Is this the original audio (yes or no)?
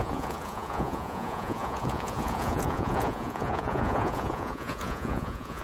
no